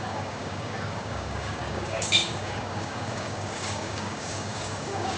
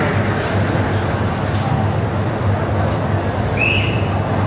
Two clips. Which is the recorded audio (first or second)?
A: second